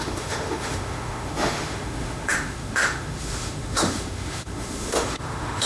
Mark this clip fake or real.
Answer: fake